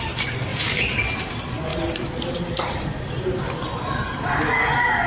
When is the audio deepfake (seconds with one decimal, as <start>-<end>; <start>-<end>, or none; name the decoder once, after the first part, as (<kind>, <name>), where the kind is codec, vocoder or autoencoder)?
none